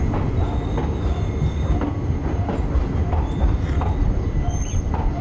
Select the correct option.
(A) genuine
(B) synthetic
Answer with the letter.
A